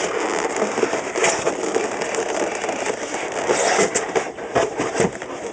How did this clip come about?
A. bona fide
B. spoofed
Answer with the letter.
A